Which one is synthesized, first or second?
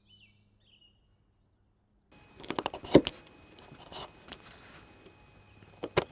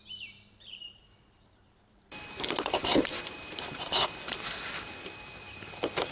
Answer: second